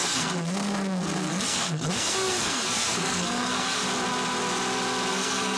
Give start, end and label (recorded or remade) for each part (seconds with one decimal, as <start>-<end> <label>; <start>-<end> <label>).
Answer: 0.0-3.8 remade; 3.8-5.1 recorded; 5.1-5.6 remade